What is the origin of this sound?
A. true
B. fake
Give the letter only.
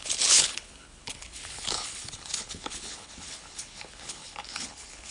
B